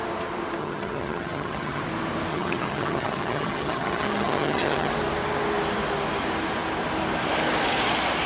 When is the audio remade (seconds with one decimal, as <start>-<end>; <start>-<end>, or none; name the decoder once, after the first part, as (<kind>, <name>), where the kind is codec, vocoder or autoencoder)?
0.6-1.8 (vocoder, HiFi-GAN); 2.3-4.9